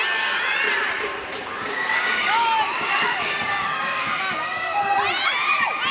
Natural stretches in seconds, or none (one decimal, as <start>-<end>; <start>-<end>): 0.0-1.4; 4.9-5.9